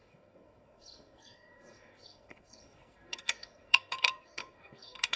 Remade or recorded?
remade